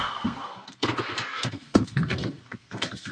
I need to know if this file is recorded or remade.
remade